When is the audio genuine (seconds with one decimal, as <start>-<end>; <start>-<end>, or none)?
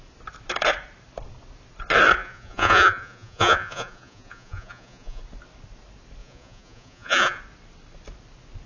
0.0-2.2; 5.2-6.2; 7.4-8.7